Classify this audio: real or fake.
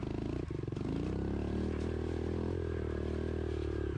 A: real